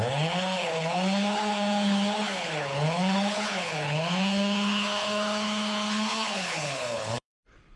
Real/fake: fake